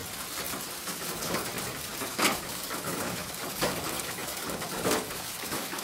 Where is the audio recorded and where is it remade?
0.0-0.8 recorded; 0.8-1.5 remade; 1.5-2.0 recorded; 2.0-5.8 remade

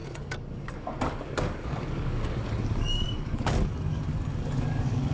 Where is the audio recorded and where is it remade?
0.0-5.1 remade

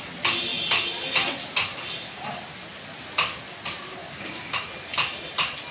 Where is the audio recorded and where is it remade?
0.0-4.0 recorded; 4.0-4.6 remade; 4.6-5.7 recorded

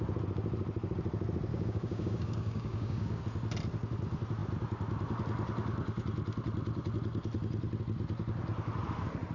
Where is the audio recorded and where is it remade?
0.0-1.5 recorded; 1.5-3.2 remade; 3.2-9.3 recorded

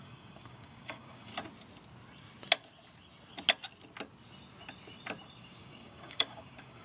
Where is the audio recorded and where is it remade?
0.0-1.3 remade; 1.3-5.4 recorded; 5.4-6.8 remade

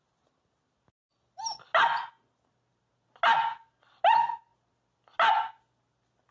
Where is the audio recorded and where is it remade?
0.0-6.3 recorded